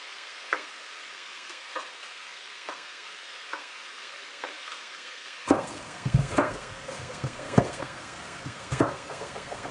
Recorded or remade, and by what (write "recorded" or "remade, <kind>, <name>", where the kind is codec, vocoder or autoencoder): remade, codec, SNAC